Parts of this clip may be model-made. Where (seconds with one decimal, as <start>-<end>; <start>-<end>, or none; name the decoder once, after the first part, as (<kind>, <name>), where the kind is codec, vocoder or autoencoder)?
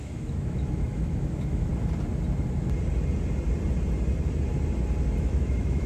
0.0-1.7 (autoencoder, DAC-VAE); 5.2-5.9